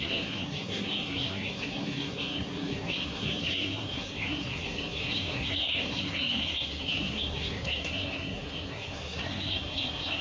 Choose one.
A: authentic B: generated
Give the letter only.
B